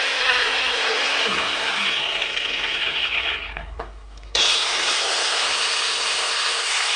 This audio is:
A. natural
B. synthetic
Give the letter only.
B